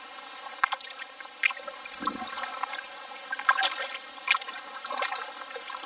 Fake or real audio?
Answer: real